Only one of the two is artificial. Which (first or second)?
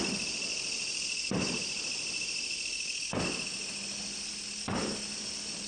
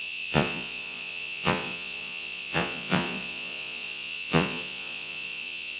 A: second